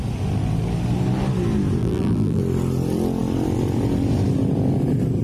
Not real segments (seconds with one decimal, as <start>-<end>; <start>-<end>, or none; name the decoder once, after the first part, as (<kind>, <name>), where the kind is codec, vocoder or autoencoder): 1.8-2.4 (vocoder, BigVGAN v2)